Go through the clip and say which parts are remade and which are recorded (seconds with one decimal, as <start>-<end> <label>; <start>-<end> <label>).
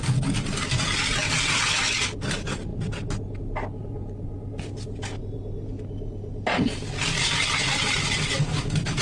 0.0-9.0 recorded